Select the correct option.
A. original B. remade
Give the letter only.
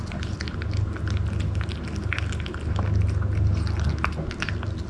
A